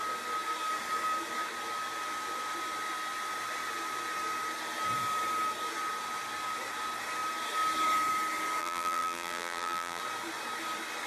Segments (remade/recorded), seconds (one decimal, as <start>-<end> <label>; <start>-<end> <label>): 0.0-8.6 recorded; 8.6-10.0 remade; 10.0-11.1 recorded